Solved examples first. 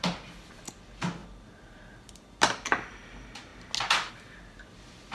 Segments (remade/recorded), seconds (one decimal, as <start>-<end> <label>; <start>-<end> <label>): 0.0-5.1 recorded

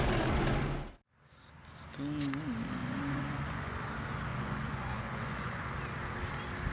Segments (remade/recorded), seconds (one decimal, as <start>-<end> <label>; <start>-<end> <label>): 0.0-2.8 recorded; 2.8-3.8 remade; 3.8-4.3 recorded; 4.3-5.7 remade; 5.7-6.7 recorded

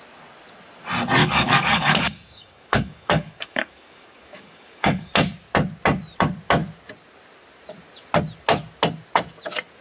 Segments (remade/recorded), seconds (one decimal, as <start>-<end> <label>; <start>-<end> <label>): 0.0-1.2 recorded; 1.2-5.1 remade; 5.1-9.8 recorded

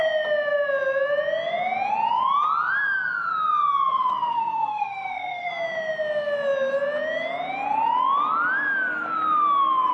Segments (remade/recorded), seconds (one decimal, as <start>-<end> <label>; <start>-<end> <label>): 0.0-4.3 recorded; 4.3-5.5 remade; 5.5-9.9 recorded

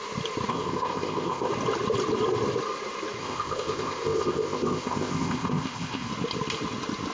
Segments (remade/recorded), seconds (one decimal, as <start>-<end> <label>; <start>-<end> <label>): 0.0-0.5 recorded; 0.5-1.5 remade; 1.5-3.2 recorded; 3.2-6.1 remade; 6.1-7.1 recorded